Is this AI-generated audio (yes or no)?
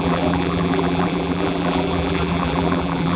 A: yes